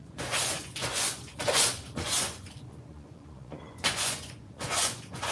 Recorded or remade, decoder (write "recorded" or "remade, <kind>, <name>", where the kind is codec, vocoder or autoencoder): remade, vocoder, Vocos